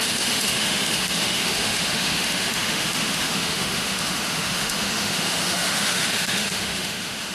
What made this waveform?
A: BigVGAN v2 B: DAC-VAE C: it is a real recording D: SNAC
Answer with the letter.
B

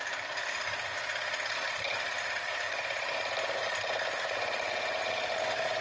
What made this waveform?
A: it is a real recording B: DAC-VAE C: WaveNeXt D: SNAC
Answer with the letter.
A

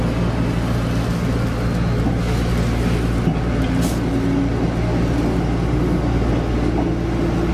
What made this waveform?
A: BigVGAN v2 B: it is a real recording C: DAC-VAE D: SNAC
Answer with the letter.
B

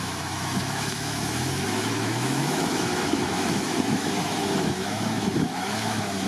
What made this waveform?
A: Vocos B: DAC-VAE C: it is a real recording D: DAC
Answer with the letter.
B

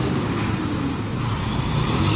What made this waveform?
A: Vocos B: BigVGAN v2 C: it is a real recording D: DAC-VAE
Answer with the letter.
C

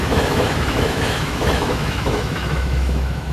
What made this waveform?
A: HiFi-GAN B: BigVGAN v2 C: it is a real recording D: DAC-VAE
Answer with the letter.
D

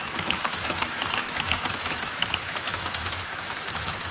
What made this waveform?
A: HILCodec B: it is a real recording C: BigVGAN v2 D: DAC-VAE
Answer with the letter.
D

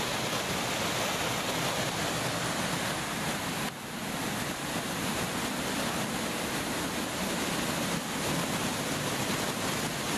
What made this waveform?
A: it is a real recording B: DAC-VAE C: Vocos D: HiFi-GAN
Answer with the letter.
A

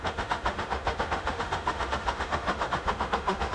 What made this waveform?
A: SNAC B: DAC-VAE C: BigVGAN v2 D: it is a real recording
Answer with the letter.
B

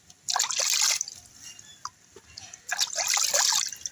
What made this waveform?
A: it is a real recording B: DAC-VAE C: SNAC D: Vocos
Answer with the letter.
A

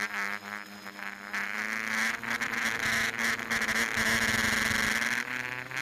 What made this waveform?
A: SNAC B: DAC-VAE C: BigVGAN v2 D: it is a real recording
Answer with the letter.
D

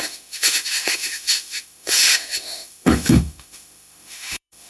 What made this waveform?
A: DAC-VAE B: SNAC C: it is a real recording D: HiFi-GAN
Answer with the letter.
A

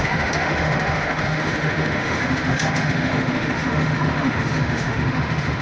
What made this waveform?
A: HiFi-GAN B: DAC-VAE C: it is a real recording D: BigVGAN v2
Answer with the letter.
B